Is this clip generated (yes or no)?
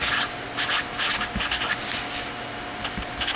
no